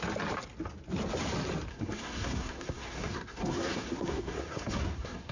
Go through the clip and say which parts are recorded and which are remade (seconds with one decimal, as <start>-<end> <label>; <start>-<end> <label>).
0.0-1.7 recorded; 1.7-5.3 remade